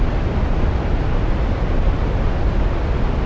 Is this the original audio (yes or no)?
yes